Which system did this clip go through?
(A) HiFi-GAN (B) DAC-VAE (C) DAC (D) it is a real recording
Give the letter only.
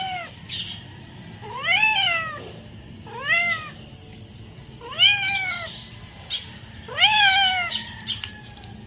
D